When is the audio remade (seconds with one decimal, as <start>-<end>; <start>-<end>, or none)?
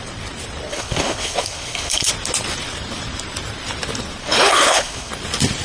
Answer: 0.7-2.1; 4.2-5.1